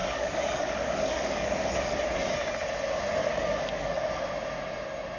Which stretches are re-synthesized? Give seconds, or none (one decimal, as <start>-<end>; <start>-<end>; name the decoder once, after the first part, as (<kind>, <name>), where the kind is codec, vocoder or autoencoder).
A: 0.0-2.0 (codec, DAC); 3.2-4.2

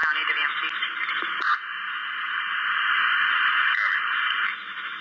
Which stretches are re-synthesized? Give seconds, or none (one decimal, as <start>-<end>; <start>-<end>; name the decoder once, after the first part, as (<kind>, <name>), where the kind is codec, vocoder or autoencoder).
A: none

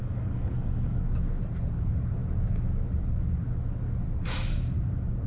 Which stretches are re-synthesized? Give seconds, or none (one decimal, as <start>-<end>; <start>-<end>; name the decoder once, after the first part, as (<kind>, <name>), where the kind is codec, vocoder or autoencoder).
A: 0.0-1.0 (codec, DAC)

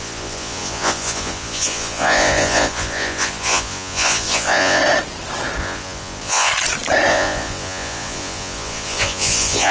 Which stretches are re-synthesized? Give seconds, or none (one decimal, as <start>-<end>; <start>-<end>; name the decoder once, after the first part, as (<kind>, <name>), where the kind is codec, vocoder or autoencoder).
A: 0.0-4.8 (vocoder, Vocos); 5.6-6.5; 7.1-9.7

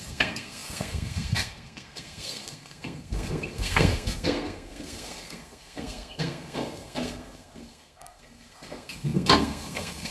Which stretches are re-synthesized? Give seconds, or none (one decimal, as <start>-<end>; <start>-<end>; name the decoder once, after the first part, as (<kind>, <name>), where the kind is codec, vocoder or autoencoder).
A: 0.0-10.1 (codec, SNAC)

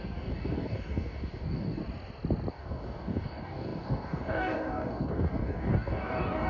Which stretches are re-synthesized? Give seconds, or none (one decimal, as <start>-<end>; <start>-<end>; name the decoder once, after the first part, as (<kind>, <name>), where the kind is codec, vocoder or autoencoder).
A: 0.0-1.8 (codec, DAC); 2.5-6.5

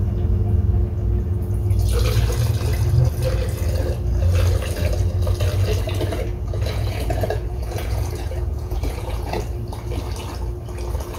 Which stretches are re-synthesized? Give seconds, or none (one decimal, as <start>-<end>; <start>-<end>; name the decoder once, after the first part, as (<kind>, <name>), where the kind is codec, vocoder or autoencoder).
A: 6.3-9.4 (vocoder, Vocos)

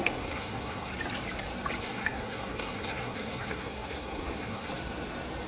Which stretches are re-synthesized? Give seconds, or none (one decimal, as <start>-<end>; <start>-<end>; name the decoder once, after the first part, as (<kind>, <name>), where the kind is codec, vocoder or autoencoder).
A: 0.0-0.9 (codec, SNAC); 1.8-4.7